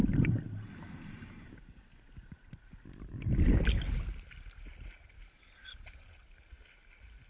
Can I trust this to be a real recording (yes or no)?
yes